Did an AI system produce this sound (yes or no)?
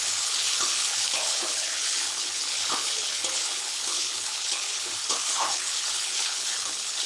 yes